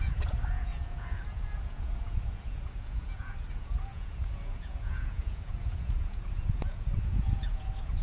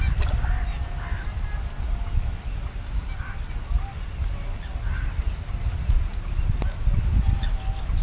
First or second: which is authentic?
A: second